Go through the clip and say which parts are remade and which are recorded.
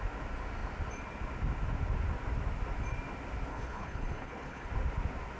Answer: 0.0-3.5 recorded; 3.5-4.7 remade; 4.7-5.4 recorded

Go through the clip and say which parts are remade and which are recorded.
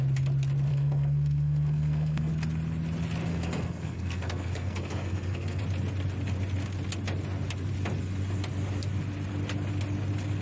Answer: 0.0-0.7 recorded; 0.7-2.3 remade; 2.3-3.3 recorded; 3.3-5.6 remade; 5.6-10.4 recorded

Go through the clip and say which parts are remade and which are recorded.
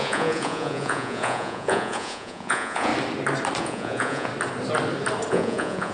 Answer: 0.0-2.9 remade; 2.9-3.6 recorded; 3.6-4.3 remade; 4.3-5.3 recorded; 5.3-5.9 remade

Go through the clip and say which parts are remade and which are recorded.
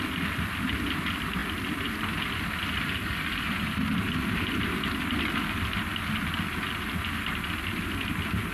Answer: 0.0-8.5 recorded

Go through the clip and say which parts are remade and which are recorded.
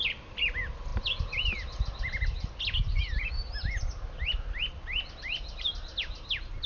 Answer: 0.0-6.7 recorded